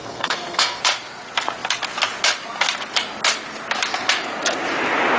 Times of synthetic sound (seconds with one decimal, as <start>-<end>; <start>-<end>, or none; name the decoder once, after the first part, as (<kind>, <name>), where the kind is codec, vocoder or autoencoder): 0.0-0.8 (codec, SNAC)